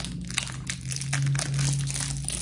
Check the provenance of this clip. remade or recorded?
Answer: recorded